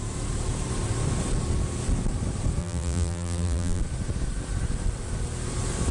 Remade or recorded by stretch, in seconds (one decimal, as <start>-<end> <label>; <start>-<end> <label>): 0.0-2.6 recorded; 2.6-3.8 remade; 3.8-5.9 recorded